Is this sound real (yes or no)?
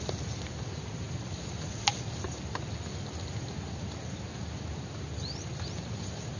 yes